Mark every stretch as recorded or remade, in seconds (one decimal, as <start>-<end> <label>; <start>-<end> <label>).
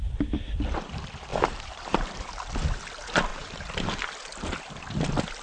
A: 0.0-1.3 recorded; 1.3-2.3 remade; 2.3-3.3 recorded; 3.3-4.1 remade; 4.1-5.4 recorded